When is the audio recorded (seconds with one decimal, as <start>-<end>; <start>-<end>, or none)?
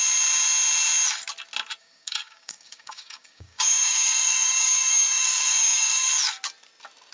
0.0-1.8; 6.1-7.1